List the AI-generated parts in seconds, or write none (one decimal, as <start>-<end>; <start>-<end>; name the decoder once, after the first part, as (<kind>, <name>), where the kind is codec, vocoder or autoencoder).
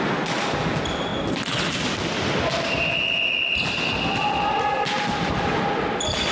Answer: none